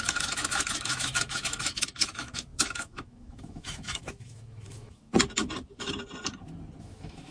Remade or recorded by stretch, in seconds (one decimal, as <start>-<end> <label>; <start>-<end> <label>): 0.0-5.1 remade; 5.1-6.8 recorded; 6.8-7.3 remade